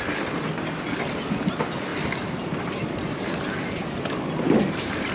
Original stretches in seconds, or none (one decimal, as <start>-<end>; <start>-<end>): none